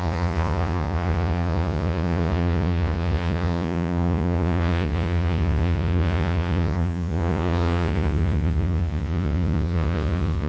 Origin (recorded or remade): remade